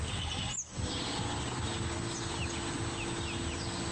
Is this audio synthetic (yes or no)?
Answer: no